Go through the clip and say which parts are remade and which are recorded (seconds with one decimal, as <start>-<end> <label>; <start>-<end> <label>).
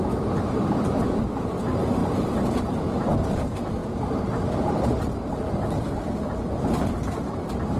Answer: 0.0-7.8 remade